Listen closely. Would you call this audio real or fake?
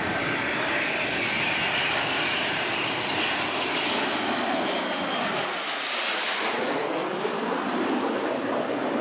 real